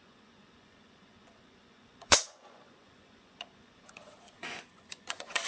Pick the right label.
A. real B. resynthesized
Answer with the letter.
B